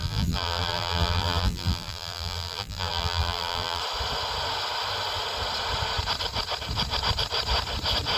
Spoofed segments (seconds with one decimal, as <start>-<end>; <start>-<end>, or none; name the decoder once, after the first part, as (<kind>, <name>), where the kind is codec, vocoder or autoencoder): 0.0-3.8 (vocoder, BigVGAN v2)